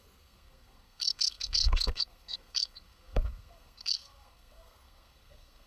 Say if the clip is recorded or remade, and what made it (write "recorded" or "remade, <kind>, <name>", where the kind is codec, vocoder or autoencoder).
remade, codec, SNAC